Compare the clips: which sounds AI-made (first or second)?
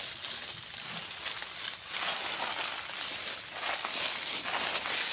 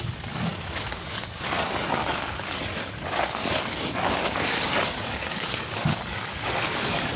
second